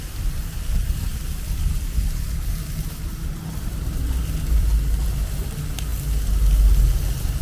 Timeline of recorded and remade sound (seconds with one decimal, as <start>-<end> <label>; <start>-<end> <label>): 0.0-7.4 recorded